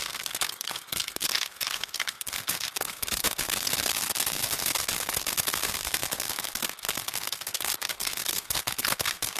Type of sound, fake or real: fake